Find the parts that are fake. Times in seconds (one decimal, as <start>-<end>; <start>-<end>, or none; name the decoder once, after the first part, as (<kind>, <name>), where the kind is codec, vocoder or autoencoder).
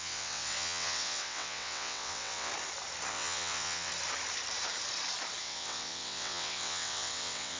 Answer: 0.0-2.5 (vocoder, WaveNeXt); 3.1-3.9; 5.4-7.6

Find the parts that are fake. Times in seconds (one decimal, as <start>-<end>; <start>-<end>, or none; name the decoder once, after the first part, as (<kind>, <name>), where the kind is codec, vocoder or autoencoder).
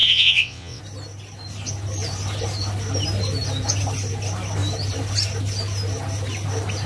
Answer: 0.0-0.8 (vocoder, WaveNeXt)